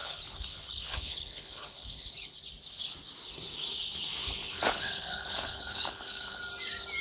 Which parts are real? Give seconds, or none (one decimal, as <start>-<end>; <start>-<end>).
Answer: 2.4-4.2; 6.4-7.0